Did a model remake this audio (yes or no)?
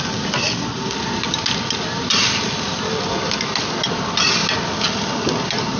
no